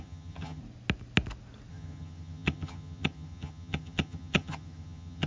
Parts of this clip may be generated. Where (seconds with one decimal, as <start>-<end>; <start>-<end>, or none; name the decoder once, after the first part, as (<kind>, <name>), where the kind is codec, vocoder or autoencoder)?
0.0-0.6 (vocoder, HiFi-GAN); 1.7-5.3